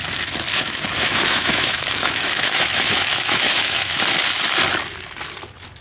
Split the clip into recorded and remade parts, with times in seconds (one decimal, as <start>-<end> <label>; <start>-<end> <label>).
0.0-0.5 recorded; 0.5-4.0 remade; 4.0-5.8 recorded